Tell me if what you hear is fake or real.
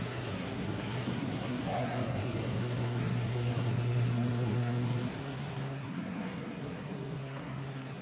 fake